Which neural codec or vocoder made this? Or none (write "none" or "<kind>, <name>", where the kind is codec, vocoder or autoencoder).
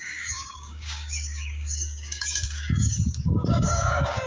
codec, DAC